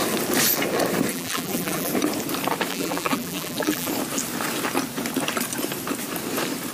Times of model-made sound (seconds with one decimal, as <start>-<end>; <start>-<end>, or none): 1.1-1.9; 2.7-3.9